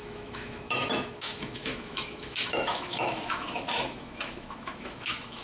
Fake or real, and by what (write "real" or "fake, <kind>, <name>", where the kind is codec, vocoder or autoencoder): fake, autoencoder, DAC-VAE